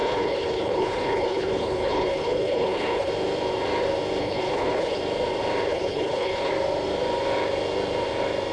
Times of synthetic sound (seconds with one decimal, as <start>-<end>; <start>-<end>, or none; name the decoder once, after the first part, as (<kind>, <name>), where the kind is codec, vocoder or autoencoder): 0.0-3.1 (codec, HILCodec); 4.2-5.0; 5.7-6.5